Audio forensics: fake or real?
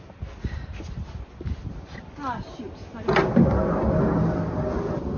real